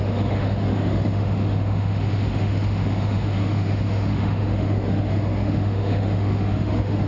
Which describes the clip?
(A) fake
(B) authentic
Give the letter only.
A